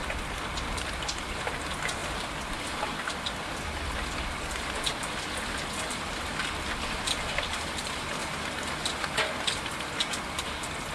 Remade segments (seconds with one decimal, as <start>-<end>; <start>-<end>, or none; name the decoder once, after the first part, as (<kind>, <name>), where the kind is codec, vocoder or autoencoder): none